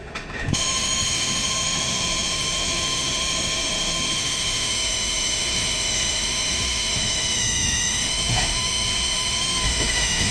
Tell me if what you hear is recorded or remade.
remade